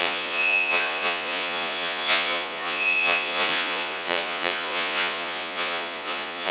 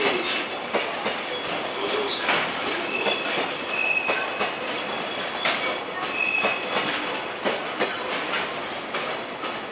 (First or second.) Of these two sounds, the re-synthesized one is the first